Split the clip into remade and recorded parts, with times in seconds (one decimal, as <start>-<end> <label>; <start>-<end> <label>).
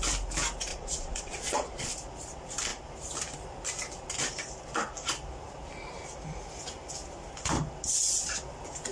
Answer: 0.0-0.7 recorded; 0.7-1.9 remade; 1.9-8.9 recorded